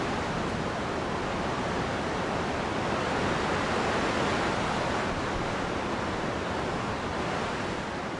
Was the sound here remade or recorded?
recorded